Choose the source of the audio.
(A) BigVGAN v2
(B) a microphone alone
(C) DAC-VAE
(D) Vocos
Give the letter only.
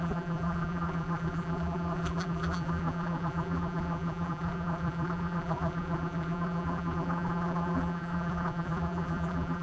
A